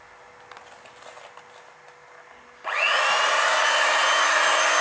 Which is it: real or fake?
real